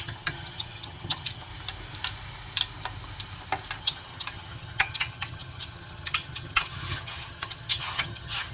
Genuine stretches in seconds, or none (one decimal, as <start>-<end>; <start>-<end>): 1.5-3.8